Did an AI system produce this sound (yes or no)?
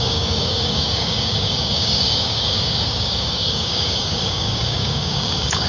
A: yes